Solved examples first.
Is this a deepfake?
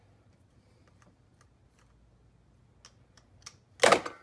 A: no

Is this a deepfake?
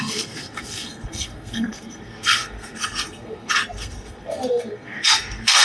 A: yes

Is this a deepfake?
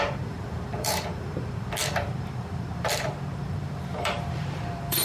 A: yes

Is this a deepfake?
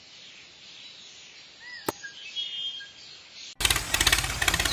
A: no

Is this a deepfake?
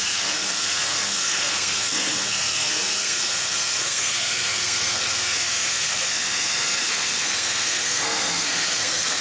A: yes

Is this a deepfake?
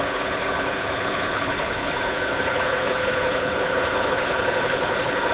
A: yes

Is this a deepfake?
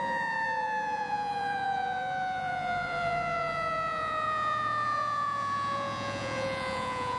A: yes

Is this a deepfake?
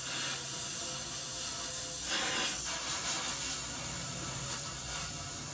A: no